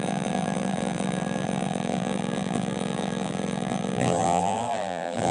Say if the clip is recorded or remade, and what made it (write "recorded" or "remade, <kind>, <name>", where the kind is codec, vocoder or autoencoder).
remade, vocoder, BigVGAN v2